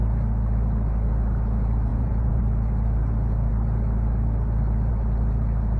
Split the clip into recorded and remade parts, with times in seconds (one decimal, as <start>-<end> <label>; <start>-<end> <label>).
0.0-1.9 recorded; 1.9-2.4 remade; 2.4-5.8 recorded